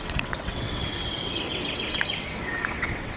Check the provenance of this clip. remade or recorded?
remade